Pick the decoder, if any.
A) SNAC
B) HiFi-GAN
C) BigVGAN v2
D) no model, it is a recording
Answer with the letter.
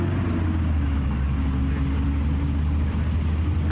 D